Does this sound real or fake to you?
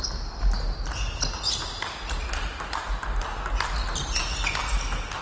real